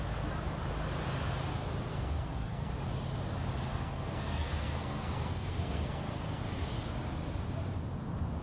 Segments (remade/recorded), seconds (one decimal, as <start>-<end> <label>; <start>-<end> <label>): 0.0-1.9 recorded; 1.9-2.7 remade; 2.7-3.7 recorded; 3.7-6.4 remade; 6.4-8.4 recorded

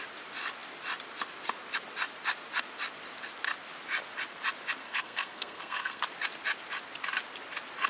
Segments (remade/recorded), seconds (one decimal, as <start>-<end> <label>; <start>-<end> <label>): 0.0-4.8 recorded; 4.8-6.0 remade; 6.0-7.9 recorded

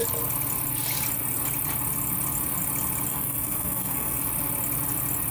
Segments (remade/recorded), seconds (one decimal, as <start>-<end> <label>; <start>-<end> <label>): 0.0-3.1 recorded; 3.1-4.2 remade; 4.2-5.3 recorded

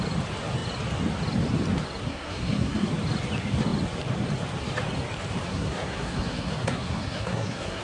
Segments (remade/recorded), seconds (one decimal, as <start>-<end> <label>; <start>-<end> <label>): 0.0-2.1 recorded; 2.1-2.9 remade; 2.9-5.5 recorded; 5.5-7.8 remade

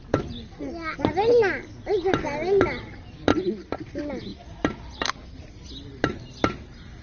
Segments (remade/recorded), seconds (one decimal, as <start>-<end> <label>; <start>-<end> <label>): 0.0-7.0 recorded

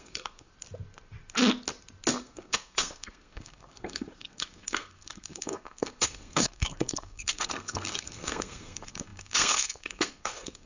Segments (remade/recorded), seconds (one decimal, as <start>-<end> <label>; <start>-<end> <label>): 0.0-0.5 remade; 0.5-2.2 recorded; 2.2-10.7 remade

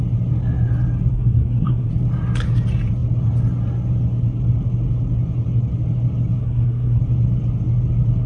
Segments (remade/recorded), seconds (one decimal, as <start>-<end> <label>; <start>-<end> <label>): 0.0-1.1 recorded; 1.1-1.9 remade; 1.9-6.4 recorded; 6.4-7.0 remade; 7.0-8.3 recorded